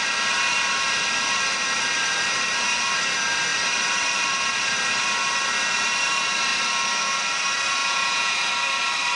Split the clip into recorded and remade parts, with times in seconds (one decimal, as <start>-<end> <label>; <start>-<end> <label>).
0.0-7.8 recorded; 7.8-8.5 remade; 8.5-9.2 recorded